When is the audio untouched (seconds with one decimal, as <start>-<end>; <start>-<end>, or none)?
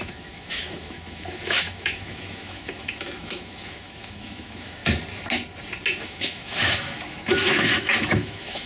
4.8-6.0